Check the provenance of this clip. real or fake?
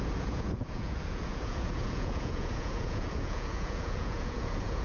fake